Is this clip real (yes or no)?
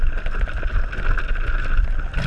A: yes